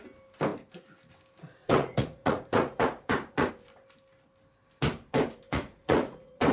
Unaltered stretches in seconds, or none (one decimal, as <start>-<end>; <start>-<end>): 0.0-1.6; 3.5-5.5